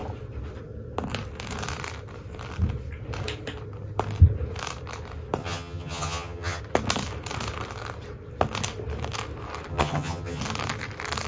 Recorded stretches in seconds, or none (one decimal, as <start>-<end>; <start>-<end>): 0.0-5.4; 6.6-9.7; 10.4-11.3